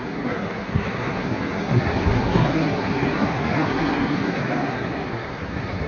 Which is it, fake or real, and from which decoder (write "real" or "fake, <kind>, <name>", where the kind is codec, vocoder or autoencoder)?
fake, codec, SNAC